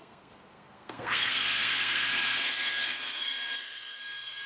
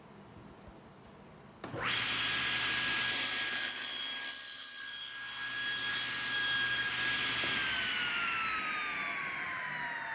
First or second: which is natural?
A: second